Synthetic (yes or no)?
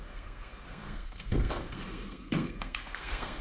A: yes